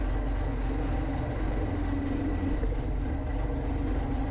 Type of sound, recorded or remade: recorded